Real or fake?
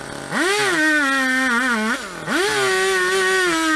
real